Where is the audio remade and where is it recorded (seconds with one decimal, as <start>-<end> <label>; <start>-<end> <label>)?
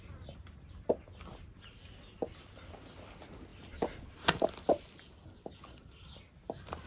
0.0-6.9 recorded